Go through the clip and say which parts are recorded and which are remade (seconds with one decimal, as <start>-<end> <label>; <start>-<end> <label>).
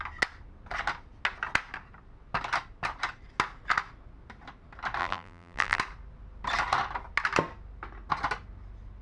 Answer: 0.0-5.0 recorded; 5.0-5.8 remade; 5.8-9.0 recorded